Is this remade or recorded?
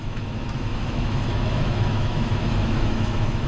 remade